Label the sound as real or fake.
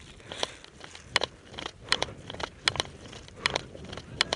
real